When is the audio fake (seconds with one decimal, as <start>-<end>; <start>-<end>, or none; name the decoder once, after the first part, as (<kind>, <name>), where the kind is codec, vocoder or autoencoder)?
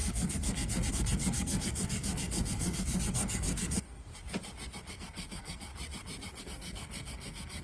0.0-4.1 (codec, SNAC); 4.9-5.7; 6.4-7.6